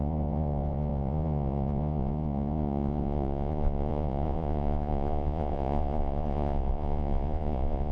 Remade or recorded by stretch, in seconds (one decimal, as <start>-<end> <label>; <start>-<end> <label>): 0.0-7.9 remade